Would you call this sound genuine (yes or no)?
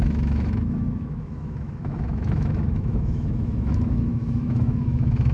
no